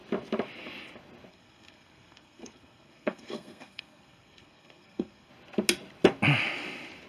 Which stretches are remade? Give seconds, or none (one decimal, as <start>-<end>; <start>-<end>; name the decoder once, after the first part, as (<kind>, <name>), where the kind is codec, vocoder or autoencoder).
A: 1.3-5.3 (codec, SNAC)